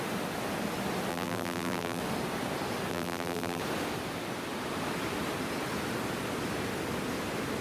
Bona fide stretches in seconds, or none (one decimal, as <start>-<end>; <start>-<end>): 0.0-1.1; 2.0-2.9; 3.6-7.6